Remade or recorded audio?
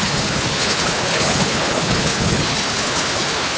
remade